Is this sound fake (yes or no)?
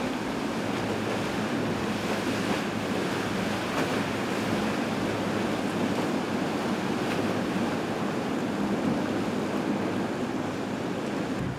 no